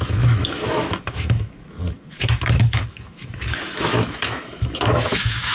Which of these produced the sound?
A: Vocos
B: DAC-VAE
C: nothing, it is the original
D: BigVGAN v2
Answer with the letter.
B